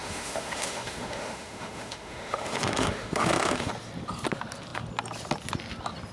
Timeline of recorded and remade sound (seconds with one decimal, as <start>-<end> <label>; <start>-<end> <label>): 0.0-3.7 remade; 3.7-6.1 recorded

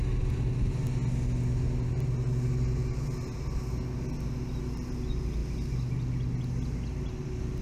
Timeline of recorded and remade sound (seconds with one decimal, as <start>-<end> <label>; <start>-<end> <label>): 0.0-7.6 recorded

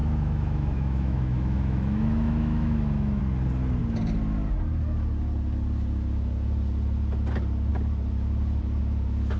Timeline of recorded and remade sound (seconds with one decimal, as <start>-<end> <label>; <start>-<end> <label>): 0.0-3.2 remade; 3.2-9.4 recorded